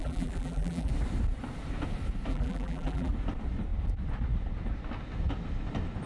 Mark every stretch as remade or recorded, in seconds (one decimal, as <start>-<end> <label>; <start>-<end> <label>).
0.0-0.9 remade; 0.9-2.3 recorded; 2.3-3.1 remade; 3.1-6.1 recorded